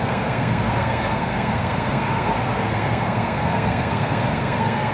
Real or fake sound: fake